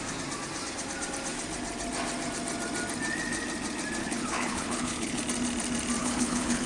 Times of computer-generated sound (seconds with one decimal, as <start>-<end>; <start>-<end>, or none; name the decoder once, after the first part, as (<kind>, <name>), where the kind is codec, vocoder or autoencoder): 4.0-5.2 (codec, HILCodec); 6.0-6.7